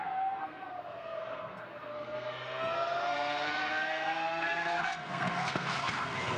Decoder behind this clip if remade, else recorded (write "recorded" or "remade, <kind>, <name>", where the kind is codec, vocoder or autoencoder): remade, codec, SNAC